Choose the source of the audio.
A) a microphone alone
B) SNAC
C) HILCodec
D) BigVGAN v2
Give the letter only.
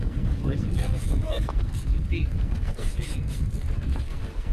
B